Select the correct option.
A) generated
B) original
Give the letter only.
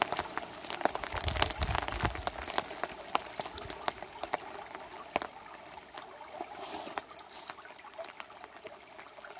B